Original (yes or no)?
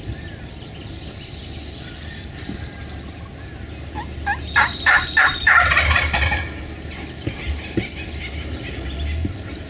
yes